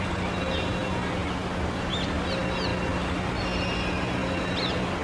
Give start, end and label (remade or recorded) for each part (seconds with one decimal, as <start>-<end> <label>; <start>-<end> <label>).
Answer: 0.0-5.0 recorded